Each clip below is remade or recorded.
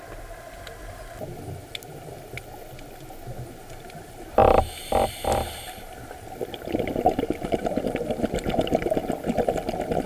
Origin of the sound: recorded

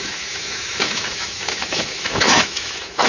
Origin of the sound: remade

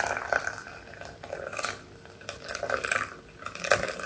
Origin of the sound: recorded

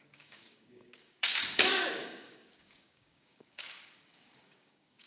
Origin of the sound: remade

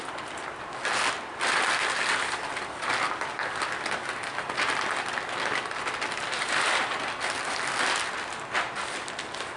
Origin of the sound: recorded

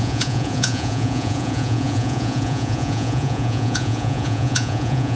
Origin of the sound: remade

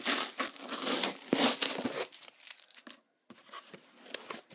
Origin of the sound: recorded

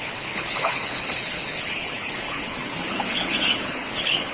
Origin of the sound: remade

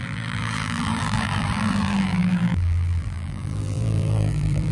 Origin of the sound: remade